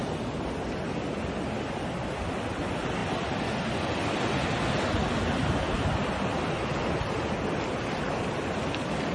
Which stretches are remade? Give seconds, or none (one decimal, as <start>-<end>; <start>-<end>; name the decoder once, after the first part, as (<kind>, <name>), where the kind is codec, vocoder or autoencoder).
none